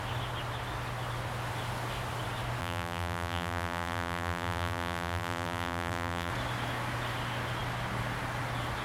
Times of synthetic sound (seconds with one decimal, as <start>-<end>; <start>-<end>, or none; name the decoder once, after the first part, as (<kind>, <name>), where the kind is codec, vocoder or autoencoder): 2.6-6.3 (vocoder, BigVGAN v2)